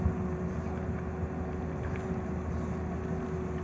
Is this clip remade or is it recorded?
recorded